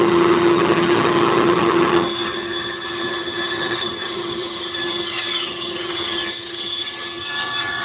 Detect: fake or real fake